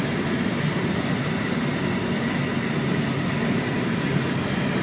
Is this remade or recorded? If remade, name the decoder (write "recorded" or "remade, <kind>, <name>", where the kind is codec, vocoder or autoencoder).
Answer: recorded